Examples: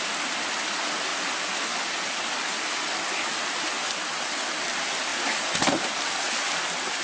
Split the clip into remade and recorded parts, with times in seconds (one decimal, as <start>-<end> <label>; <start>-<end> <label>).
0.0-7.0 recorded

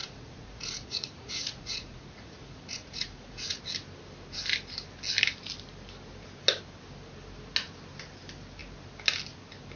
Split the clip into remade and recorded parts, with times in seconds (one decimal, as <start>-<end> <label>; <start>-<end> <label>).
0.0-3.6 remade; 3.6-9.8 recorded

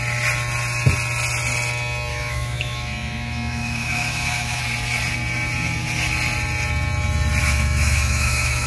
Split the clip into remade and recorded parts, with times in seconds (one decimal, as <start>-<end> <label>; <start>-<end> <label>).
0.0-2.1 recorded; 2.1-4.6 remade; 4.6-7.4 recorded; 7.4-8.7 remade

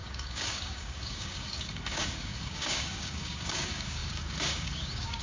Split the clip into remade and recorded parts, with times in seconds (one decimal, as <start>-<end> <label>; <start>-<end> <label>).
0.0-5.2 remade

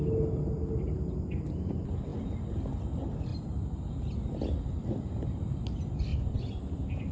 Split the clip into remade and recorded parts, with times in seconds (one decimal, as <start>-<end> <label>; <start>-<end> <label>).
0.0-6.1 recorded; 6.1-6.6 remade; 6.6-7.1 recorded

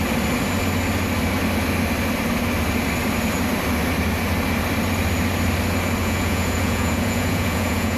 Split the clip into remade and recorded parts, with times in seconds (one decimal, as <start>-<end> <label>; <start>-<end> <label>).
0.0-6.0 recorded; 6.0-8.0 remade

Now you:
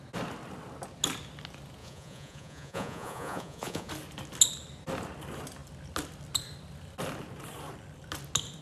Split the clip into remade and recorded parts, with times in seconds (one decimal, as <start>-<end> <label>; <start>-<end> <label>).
0.0-1.8 recorded; 1.8-3.9 remade; 3.9-8.6 recorded

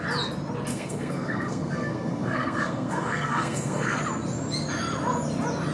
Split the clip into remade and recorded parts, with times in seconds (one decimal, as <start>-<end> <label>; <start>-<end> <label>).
0.0-0.7 recorded; 0.7-4.0 remade; 4.0-5.7 recorded